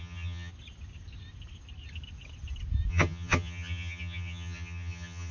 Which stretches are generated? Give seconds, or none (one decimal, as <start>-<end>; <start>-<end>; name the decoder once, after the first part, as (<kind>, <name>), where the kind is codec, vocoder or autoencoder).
0.0-0.5 (vocoder, HiFi-GAN); 2.9-5.3